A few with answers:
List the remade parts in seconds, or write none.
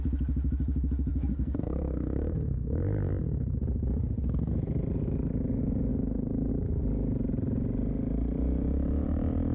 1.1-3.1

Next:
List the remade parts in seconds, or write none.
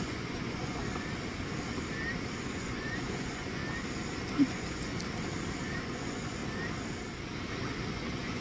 0.0-0.8; 2.4-3.6; 4.5-4.9; 5.8-6.4; 7.9-8.4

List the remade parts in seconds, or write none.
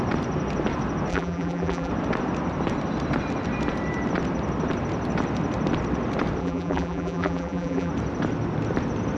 1.1-1.9; 6.4-7.9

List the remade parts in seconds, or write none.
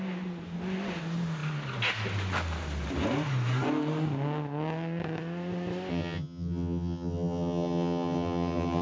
5.9-8.8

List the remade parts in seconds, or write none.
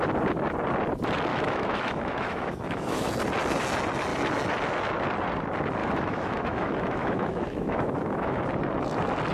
1.3-3.1; 5.8-8.4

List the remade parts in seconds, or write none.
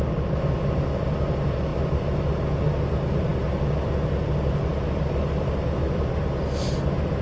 none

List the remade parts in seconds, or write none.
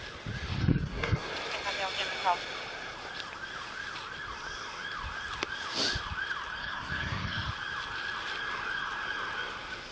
0.6-1.3; 6.6-7.5